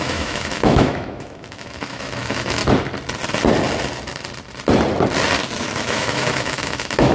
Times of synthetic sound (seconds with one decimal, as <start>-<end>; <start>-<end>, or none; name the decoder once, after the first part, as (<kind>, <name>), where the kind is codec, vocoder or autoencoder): 0.0-2.6 (autoencoder, DAC-VAE); 5.6-7.1